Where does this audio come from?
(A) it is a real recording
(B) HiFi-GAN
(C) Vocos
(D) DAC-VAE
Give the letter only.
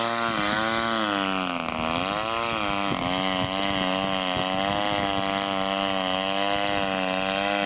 A